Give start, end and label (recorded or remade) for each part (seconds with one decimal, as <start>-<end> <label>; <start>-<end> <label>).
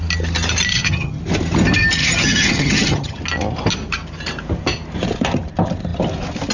0.0-0.7 recorded; 0.7-1.2 remade; 1.2-2.0 recorded; 2.0-3.2 remade; 3.2-6.5 recorded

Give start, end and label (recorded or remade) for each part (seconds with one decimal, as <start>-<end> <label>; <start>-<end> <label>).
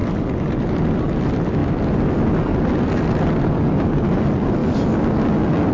0.0-5.7 recorded